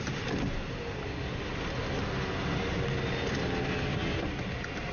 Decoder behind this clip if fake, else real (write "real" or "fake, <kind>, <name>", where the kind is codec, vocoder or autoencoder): real